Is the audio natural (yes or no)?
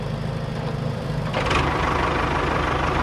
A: yes